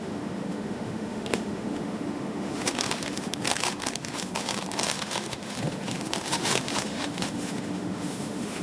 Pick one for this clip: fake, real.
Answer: fake